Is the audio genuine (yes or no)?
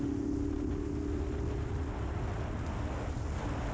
yes